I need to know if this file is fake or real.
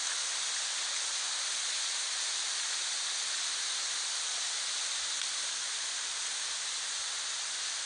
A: real